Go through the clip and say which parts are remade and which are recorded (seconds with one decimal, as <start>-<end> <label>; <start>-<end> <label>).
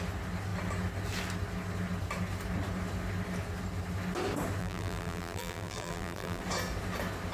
0.0-4.6 recorded; 4.6-6.4 remade; 6.4-7.3 recorded